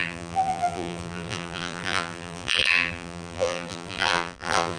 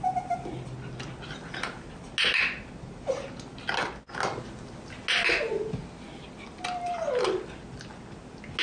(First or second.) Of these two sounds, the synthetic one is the first